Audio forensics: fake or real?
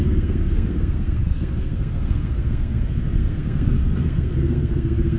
fake